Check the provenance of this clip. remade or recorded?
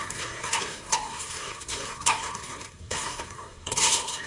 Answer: remade